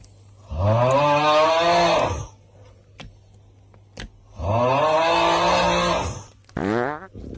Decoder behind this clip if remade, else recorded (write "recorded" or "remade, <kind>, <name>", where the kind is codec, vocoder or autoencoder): recorded